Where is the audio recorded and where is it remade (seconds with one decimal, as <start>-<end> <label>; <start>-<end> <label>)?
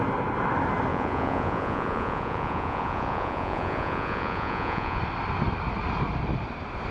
0.0-0.9 recorded; 0.9-5.0 remade; 5.0-6.9 recorded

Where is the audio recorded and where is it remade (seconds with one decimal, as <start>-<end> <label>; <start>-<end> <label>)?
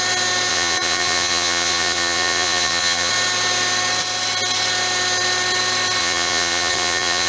0.0-0.5 recorded; 0.5-3.1 remade; 3.1-6.0 recorded; 6.0-7.3 remade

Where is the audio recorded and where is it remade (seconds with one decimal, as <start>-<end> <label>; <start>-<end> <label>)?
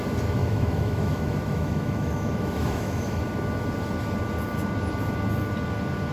0.0-0.4 recorded; 0.4-3.2 remade; 3.2-6.1 recorded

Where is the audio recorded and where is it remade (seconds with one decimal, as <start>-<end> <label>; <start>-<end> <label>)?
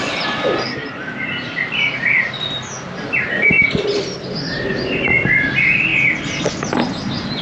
0.0-7.4 recorded